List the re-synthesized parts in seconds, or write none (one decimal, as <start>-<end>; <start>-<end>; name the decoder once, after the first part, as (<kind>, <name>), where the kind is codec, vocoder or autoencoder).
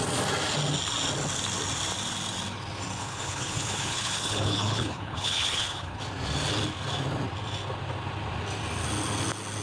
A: 3.0-6.0 (codec, HILCodec)